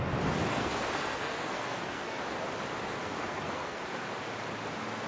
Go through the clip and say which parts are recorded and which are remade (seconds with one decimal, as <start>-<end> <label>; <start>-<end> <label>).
0.0-0.5 recorded; 0.5-2.2 remade; 2.2-3.0 recorded; 3.0-3.8 remade; 3.8-5.1 recorded